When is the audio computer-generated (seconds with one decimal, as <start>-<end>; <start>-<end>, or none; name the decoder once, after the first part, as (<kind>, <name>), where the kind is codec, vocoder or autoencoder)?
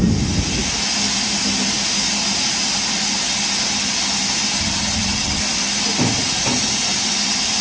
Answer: 4.6-5.4 (vocoder, HiFi-GAN)